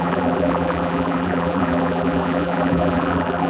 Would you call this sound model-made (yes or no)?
yes